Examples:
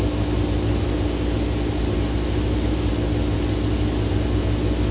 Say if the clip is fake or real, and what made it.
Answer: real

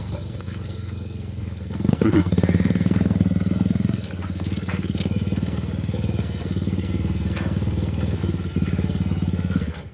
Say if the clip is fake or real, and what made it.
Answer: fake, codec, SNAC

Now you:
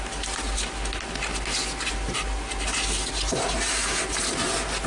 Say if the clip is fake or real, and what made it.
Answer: real